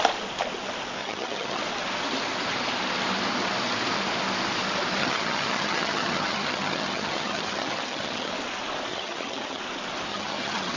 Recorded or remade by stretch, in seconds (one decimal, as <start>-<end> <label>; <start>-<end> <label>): 0.0-1.0 recorded; 1.0-1.6 remade; 1.6-5.0 recorded; 5.0-8.3 remade; 8.3-8.9 recorded; 8.9-9.6 remade; 9.6-10.1 recorded; 10.1-10.8 remade